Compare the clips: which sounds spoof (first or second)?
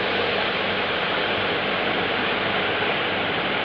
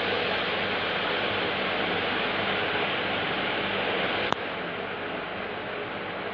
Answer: first